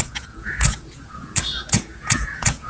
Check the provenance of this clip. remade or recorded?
remade